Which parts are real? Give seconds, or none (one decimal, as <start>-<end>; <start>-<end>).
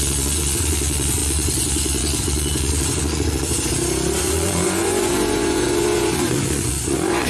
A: 3.5-4.2